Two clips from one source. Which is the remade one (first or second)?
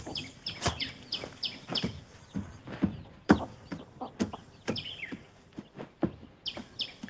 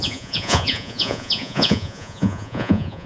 second